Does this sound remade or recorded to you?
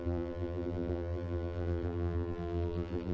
remade